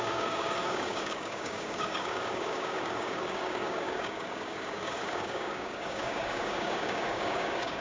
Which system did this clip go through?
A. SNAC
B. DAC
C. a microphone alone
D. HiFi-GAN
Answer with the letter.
B